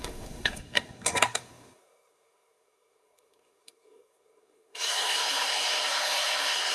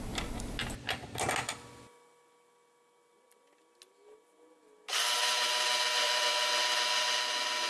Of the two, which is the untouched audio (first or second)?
second